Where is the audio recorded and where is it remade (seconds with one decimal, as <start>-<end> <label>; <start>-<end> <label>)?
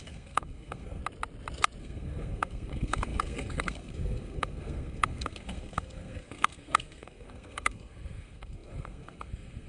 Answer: 0.0-1.0 remade; 1.0-1.8 recorded; 1.8-9.7 remade